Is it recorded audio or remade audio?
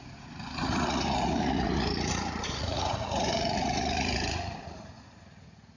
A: remade